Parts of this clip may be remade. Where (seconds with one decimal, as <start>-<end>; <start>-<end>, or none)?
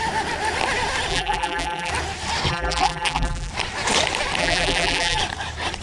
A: 1.1-1.9; 2.5-3.5; 4.4-5.2